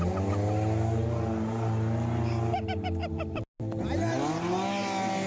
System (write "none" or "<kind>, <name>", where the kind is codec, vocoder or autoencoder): none